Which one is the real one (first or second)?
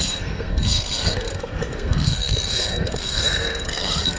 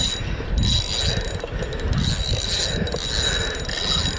second